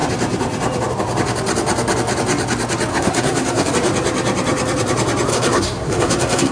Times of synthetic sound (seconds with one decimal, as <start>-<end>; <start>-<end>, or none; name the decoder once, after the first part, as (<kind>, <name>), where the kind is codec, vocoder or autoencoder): 2.9-3.7 (codec, SNAC); 5.3-6.5